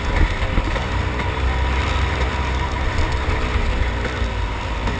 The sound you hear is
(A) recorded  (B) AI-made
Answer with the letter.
A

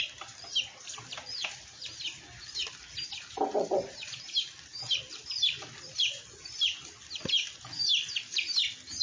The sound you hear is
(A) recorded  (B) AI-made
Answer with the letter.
A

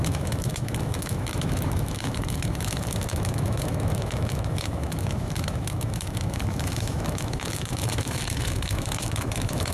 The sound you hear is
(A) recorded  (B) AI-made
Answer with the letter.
B